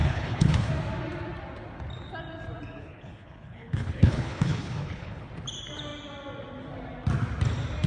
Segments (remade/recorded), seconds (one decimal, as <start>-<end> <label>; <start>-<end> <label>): 0.0-0.7 remade; 0.7-2.8 recorded; 2.8-5.3 remade; 5.3-7.9 recorded